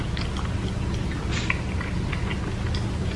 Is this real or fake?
real